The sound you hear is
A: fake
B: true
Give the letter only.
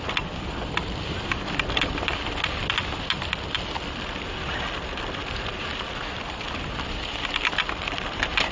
B